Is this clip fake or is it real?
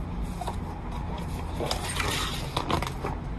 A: real